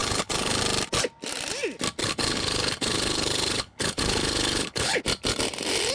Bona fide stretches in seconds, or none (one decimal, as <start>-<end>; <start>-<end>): 0.6-2.0; 5.0-5.9